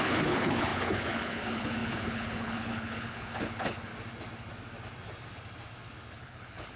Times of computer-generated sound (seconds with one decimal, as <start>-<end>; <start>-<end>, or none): 0.0-3.9; 6.1-6.8